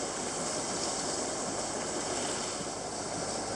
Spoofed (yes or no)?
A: no